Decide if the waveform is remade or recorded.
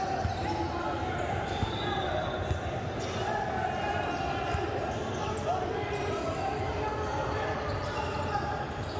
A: recorded